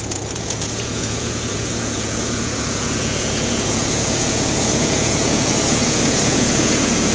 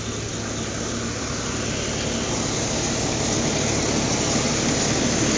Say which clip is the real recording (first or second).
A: second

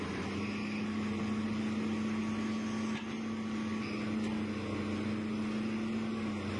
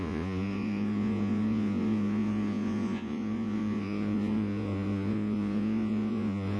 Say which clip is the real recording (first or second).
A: first